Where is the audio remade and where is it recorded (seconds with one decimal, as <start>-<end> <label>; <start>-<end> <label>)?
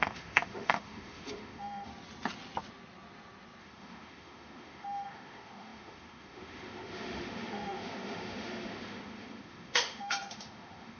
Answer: 0.0-1.9 remade; 1.9-3.6 recorded; 3.6-11.0 remade